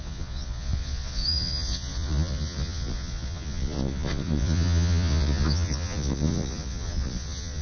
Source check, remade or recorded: remade